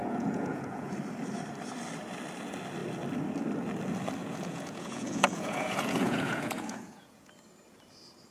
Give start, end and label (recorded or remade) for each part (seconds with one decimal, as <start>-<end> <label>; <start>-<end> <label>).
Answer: 0.0-0.9 remade; 0.9-4.2 recorded; 4.2-7.3 remade; 7.3-8.3 recorded